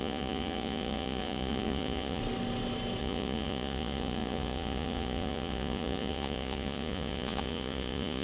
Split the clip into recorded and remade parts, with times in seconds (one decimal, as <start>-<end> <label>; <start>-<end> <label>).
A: 0.0-2.2 remade; 2.2-3.0 recorded; 3.0-8.2 remade

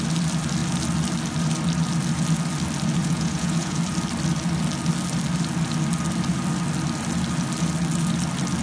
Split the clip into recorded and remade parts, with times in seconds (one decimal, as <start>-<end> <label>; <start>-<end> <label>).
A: 0.0-3.0 recorded; 3.0-3.8 remade; 3.8-8.6 recorded